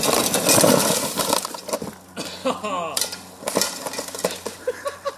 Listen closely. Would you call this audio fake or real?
real